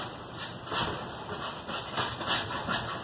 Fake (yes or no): no